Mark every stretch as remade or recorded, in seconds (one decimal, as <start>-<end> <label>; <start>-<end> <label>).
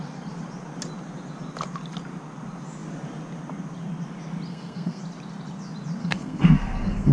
0.0-4.5 recorded; 4.5-5.0 remade; 5.0-6.0 recorded; 6.0-7.1 remade